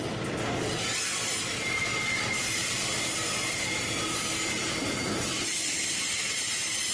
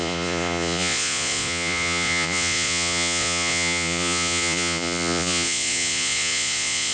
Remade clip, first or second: second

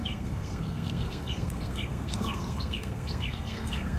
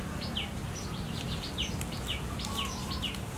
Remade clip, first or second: first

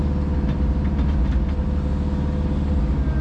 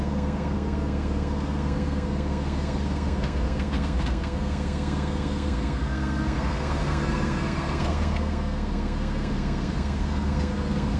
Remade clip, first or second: second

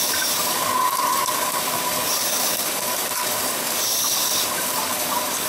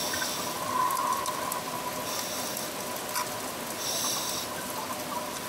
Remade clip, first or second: first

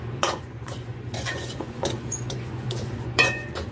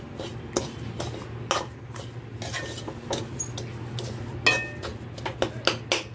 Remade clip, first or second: first